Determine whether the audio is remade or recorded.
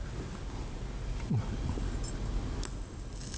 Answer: recorded